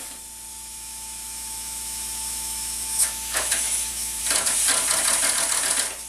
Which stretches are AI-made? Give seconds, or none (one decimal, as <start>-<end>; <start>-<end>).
0.5-4.2